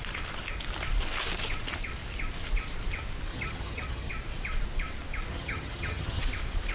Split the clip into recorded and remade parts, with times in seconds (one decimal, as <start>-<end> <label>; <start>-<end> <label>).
0.0-3.3 recorded; 3.3-4.1 remade; 4.1-5.3 recorded; 5.3-6.2 remade; 6.2-6.7 recorded